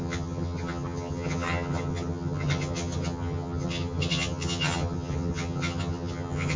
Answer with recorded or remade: remade